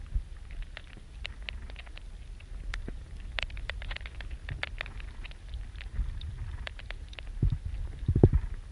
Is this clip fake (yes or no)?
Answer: no